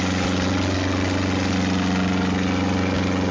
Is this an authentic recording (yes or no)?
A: yes